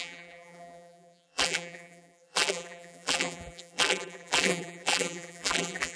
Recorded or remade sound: remade